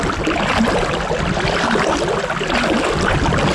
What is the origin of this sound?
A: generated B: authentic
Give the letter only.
B